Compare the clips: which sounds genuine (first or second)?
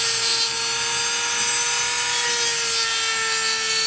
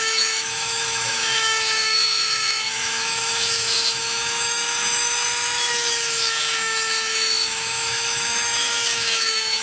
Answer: first